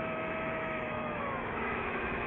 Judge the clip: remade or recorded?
remade